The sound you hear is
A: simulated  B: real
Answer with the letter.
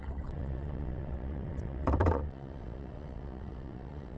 A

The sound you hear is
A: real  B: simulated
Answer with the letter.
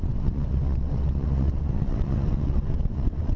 B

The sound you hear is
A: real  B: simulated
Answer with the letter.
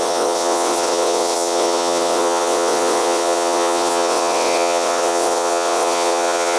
B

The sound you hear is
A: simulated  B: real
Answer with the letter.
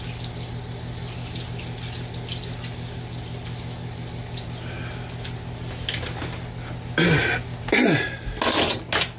B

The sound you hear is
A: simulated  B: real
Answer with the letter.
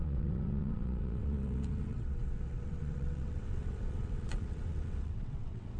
A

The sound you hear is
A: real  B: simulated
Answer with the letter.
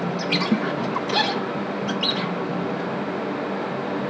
A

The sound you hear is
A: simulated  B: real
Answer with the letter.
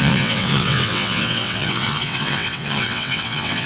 A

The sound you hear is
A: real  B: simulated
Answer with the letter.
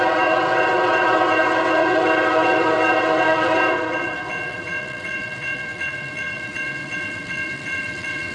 B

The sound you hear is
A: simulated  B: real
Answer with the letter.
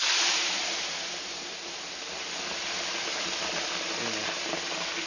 B